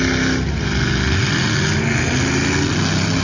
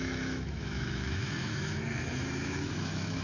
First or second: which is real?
first